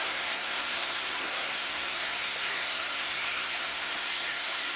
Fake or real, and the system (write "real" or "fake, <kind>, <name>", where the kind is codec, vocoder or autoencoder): fake, codec, SNAC